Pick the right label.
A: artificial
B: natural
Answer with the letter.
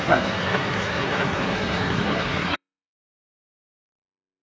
A